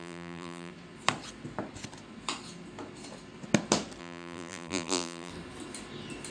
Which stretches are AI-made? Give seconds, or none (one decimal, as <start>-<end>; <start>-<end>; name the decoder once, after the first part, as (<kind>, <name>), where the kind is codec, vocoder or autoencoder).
0.0-0.7 (vocoder, BigVGAN v2); 4.0-5.3